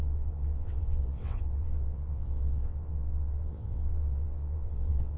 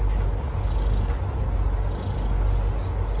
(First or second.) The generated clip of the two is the first